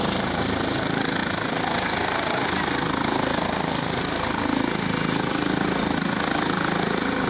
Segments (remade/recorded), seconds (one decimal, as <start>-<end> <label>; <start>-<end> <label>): 0.0-7.3 recorded